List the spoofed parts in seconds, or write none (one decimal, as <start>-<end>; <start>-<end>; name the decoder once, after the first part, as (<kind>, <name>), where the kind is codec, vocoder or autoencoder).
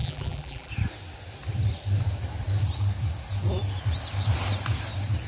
0.0-0.7 (vocoder, BigVGAN v2)